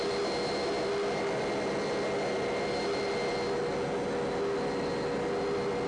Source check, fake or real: real